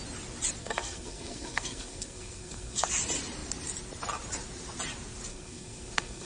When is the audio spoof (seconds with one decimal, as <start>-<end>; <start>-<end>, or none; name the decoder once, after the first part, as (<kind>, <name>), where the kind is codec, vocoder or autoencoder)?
0.6-2.9 (codec, SNAC); 5.3-6.3